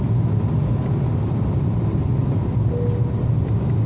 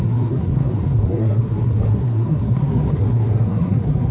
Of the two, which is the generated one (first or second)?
second